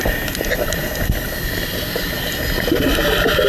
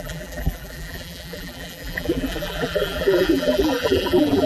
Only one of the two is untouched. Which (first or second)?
first